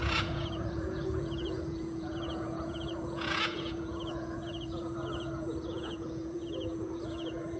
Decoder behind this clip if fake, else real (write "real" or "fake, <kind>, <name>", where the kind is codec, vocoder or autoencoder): fake, vocoder, Vocos